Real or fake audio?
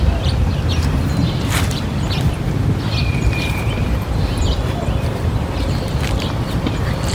fake